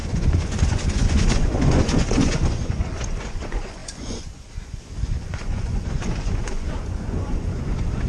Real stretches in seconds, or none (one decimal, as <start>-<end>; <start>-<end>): none